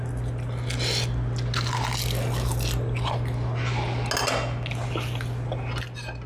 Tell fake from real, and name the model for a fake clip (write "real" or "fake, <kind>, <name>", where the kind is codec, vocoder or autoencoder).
real